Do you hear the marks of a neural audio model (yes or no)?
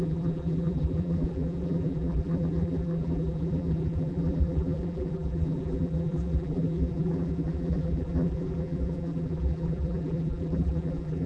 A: yes